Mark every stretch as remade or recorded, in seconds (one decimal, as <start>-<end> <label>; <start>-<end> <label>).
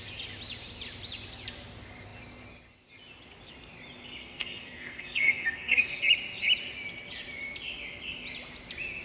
0.0-4.2 recorded; 4.2-6.0 remade; 6.0-9.0 recorded